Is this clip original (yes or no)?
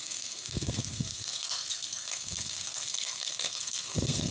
no